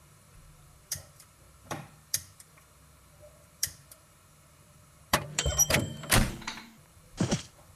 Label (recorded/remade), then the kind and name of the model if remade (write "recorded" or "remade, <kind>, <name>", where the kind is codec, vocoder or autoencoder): remade, vocoder, BigVGAN v2